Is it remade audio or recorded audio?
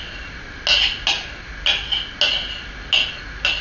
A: recorded